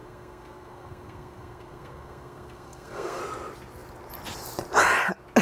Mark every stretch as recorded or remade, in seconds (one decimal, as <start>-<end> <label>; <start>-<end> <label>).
0.0-3.2 remade; 3.2-5.4 recorded